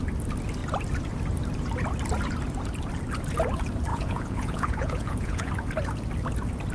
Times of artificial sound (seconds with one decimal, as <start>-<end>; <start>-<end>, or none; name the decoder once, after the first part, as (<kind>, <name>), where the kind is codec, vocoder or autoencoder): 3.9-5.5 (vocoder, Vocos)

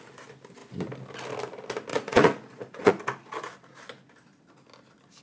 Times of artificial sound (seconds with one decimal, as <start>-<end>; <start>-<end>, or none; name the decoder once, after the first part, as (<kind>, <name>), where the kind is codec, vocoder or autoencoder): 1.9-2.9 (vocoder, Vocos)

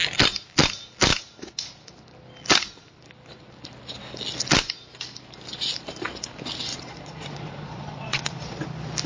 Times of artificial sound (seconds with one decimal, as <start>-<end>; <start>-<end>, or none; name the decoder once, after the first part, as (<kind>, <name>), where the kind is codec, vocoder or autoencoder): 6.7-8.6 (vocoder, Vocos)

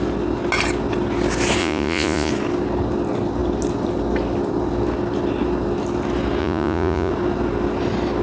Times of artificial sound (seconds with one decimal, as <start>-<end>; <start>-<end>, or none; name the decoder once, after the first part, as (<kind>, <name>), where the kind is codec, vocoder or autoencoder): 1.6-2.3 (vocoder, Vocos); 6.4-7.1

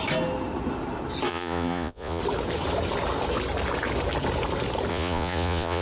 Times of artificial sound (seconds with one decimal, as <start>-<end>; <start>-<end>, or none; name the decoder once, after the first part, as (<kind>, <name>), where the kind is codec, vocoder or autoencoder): 1.3-2.2 (vocoder, Vocos); 4.9-5.8

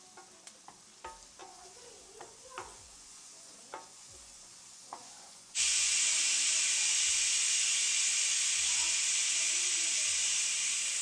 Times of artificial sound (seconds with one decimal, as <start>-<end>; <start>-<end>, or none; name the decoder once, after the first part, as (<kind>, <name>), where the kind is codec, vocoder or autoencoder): 1.4-6.1 (vocoder, Vocos)

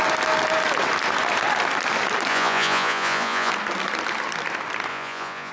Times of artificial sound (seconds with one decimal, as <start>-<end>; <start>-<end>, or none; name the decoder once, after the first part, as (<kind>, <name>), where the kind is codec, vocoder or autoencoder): 2.3-3.5 (vocoder, Vocos); 4.9-5.5